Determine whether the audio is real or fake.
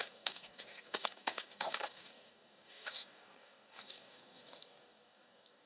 fake